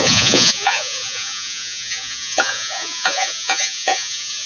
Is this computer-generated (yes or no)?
yes